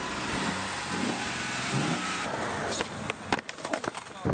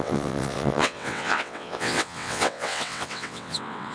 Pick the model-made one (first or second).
second